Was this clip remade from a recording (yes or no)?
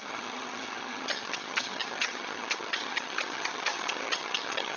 yes